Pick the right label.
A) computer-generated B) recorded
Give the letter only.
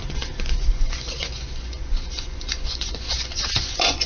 A